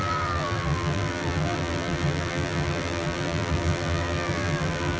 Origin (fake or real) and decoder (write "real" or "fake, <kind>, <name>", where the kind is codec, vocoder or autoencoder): fake, vocoder, BigVGAN v2